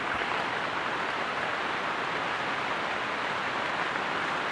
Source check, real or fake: real